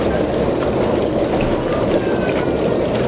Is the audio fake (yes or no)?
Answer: no